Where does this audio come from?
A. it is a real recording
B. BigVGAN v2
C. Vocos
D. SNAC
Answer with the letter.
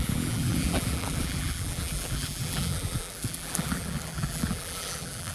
B